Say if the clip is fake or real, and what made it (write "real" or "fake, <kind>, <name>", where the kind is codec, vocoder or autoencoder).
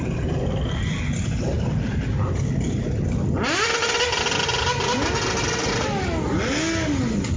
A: real